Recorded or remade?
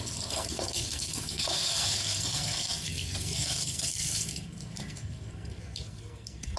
remade